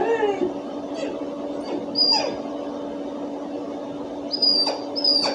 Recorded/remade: recorded